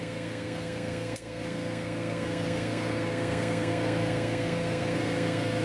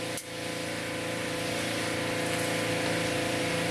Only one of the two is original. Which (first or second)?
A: second